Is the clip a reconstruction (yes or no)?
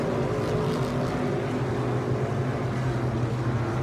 no